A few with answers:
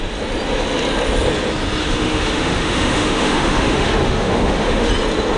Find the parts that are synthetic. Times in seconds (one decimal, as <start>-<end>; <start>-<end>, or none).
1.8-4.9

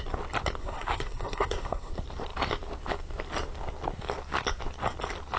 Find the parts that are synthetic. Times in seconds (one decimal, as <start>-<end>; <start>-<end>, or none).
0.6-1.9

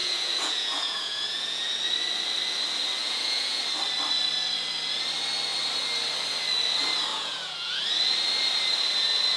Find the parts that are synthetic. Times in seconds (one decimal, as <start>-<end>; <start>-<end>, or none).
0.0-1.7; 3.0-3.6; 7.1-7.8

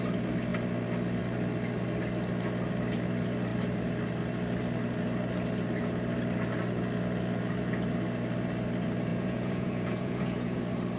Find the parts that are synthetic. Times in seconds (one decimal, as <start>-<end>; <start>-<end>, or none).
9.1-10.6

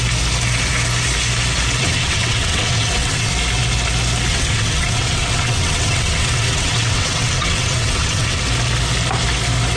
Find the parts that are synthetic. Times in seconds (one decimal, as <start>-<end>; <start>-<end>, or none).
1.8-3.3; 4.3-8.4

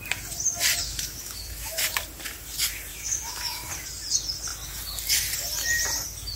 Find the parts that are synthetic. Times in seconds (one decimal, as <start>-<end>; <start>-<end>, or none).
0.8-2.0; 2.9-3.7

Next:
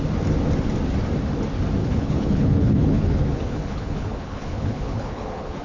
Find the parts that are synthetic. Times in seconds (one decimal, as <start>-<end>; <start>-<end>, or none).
1.8-5.6